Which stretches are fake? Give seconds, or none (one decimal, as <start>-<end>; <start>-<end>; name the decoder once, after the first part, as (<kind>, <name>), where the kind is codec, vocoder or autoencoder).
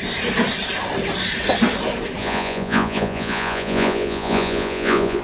2.2-5.2 (vocoder, Vocos)